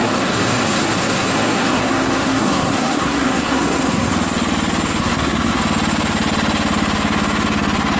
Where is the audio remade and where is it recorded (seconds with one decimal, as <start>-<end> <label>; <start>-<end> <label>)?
0.0-4.1 remade; 4.1-5.0 recorded; 5.0-5.6 remade; 5.6-8.0 recorded